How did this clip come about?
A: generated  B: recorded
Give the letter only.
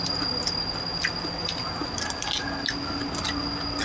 B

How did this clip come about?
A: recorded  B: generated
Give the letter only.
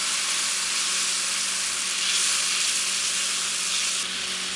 A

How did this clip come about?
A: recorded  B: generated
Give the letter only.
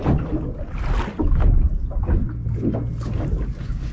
A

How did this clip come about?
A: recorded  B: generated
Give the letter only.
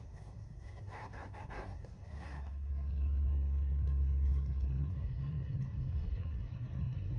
B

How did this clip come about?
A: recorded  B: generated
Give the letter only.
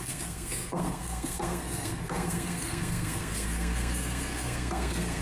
B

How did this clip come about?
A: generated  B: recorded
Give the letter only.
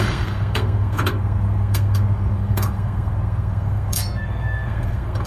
A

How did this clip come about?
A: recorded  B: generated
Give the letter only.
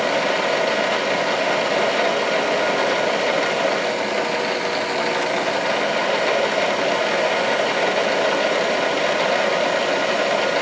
A